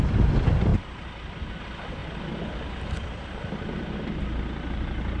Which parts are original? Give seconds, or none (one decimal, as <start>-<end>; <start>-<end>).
0.0-0.7; 1.6-2.0; 4.1-5.2